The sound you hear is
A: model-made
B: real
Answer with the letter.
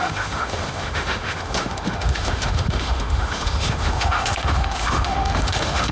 A